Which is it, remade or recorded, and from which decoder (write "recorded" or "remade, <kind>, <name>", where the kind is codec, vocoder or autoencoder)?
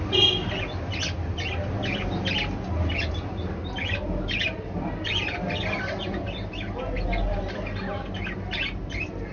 recorded